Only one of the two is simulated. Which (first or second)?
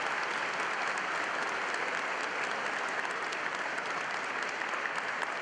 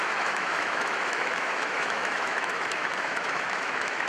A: second